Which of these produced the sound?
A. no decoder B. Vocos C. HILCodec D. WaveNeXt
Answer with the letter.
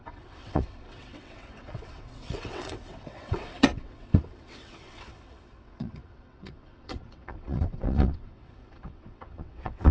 D